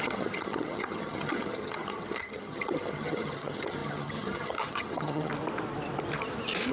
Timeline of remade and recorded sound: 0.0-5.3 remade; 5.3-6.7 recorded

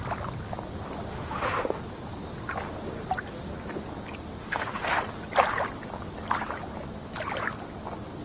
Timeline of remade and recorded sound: 0.0-1.1 recorded; 1.1-1.8 remade; 1.8-4.4 recorded; 4.4-5.0 remade; 5.0-8.2 recorded